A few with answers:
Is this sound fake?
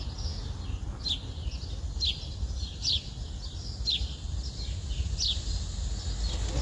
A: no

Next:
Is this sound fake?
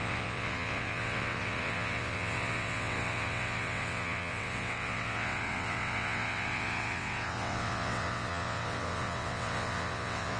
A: yes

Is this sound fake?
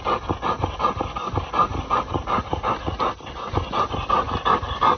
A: no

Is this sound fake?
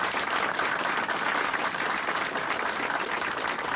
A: yes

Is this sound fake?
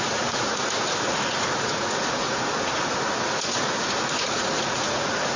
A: yes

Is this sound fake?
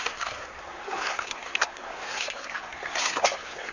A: yes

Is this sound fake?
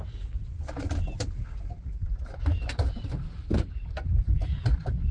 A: no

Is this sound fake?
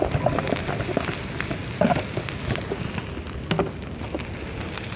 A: no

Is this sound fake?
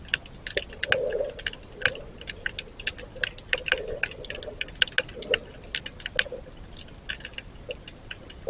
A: no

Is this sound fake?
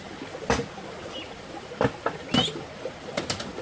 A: no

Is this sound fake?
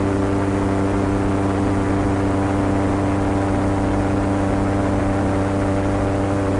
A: no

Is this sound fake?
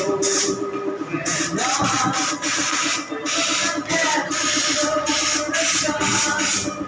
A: no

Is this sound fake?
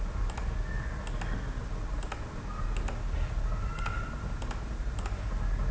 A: no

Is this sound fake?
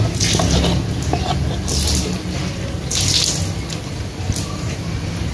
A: no